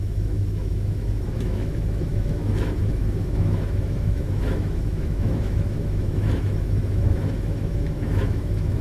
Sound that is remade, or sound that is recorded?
remade